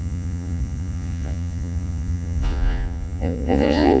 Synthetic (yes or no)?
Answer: yes